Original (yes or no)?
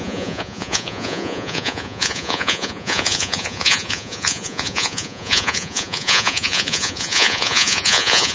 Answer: no